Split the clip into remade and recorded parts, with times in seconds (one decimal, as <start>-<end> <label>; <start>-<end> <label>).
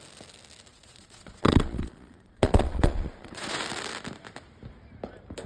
0.0-0.7 recorded; 0.7-3.6 remade; 3.6-5.5 recorded